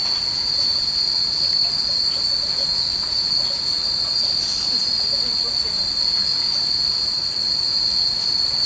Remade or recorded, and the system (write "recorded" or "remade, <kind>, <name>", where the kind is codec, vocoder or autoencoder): remade, vocoder, BigVGAN v2